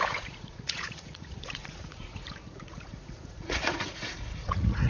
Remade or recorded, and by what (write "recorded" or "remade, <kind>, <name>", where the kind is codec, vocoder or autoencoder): remade, vocoder, Vocos